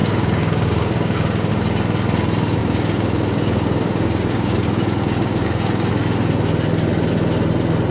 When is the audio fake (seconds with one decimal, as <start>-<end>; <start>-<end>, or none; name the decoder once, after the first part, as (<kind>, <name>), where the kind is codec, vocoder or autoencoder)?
0.0-1.5 (codec, DAC); 2.6-5.9